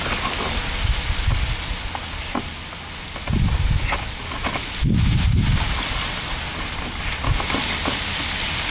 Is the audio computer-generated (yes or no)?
no